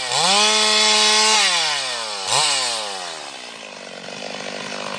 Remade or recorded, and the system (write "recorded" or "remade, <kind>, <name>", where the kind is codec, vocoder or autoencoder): recorded